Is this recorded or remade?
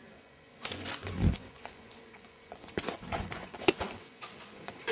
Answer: remade